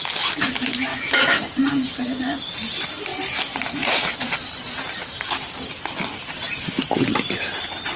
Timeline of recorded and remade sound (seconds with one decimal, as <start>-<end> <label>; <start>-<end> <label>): 0.0-0.9 recorded; 0.9-1.4 remade; 1.4-8.0 recorded